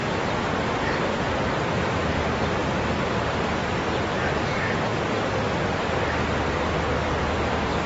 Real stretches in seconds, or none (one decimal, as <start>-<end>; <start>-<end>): 0.0-7.9